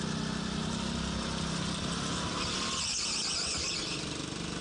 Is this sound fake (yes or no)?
no